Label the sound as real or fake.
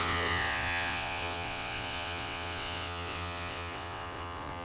fake